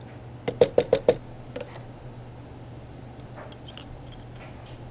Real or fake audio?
real